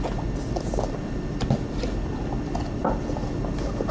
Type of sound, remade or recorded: recorded